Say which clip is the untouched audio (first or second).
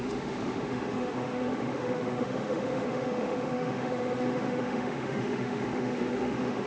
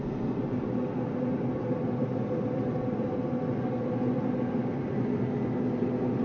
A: second